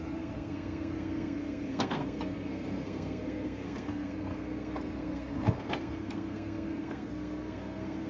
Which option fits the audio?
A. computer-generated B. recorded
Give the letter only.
A